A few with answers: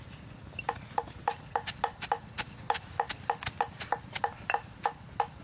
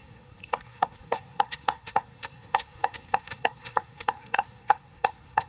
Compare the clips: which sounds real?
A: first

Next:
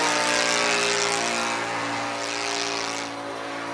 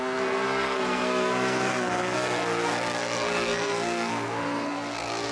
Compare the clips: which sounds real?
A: first